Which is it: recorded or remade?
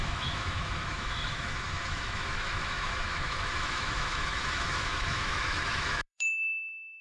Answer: remade